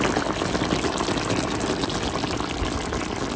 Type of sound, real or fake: real